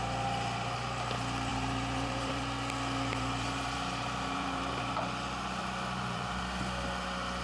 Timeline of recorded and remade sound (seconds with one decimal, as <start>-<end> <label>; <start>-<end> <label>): 0.0-1.5 recorded; 1.5-2.4 remade; 2.4-3.1 recorded; 3.1-6.4 remade; 6.4-7.4 recorded